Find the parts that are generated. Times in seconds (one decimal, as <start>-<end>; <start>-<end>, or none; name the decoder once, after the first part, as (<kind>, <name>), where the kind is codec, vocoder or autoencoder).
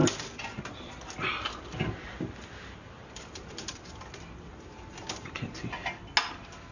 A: 3.0-3.9 (vocoder, BigVGAN v2); 4.5-5.7